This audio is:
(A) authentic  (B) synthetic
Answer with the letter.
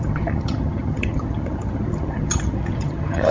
B